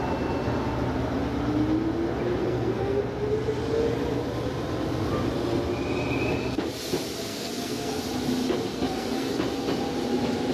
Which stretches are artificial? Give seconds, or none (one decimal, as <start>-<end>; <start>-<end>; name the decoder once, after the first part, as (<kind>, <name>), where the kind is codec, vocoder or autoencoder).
2.4-3.0 (codec, SNAC); 7.3-8.0; 8.7-9.3